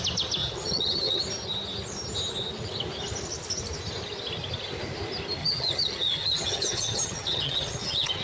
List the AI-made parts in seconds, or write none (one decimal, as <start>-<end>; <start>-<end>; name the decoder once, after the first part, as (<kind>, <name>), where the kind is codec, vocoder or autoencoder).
0.4-1.2 (vocoder, HiFi-GAN); 5.4-8.2